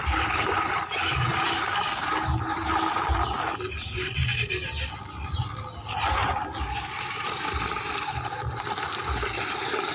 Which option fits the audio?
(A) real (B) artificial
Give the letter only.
A